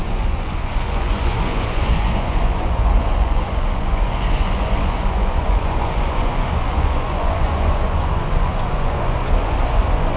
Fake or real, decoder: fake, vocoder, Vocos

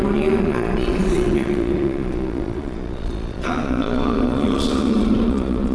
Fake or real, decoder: fake, vocoder, Vocos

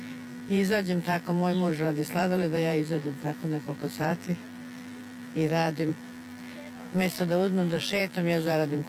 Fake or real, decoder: fake, vocoder, BigVGAN v2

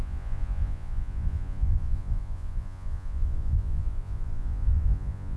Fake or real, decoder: fake, vocoder, Vocos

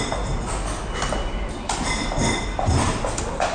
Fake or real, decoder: real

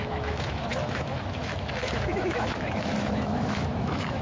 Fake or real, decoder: fake, autoencoder, DAC-VAE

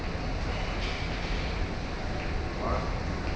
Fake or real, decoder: real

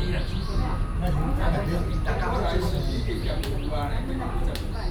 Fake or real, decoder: real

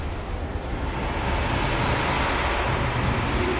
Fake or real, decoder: real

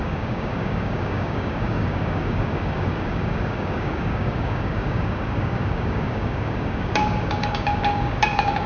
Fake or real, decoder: fake, codec, DAC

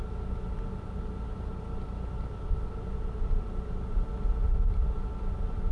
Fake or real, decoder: real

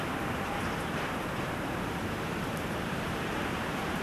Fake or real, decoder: fake, vocoder, BigVGAN v2